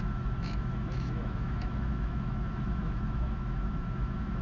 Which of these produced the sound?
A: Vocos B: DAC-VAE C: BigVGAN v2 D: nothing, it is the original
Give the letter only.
B